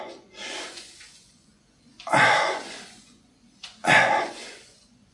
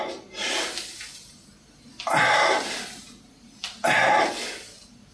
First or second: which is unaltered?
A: second